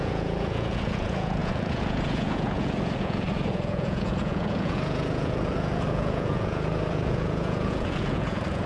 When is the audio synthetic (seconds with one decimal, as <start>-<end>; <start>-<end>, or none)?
0.0-8.7